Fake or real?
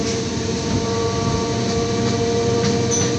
real